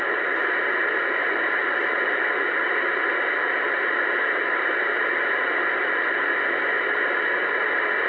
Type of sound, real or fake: real